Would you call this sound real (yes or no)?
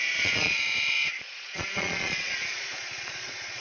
no